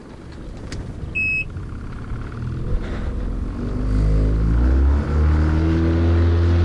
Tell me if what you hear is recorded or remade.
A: recorded